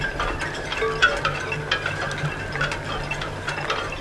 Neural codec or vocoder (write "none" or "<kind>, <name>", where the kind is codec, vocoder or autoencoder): none